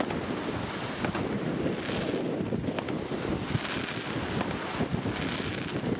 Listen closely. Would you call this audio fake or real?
real